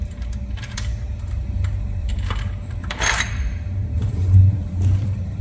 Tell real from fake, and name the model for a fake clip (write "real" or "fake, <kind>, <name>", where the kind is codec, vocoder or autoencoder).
fake, vocoder, BigVGAN v2